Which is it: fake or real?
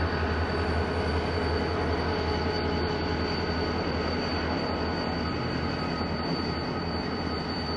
real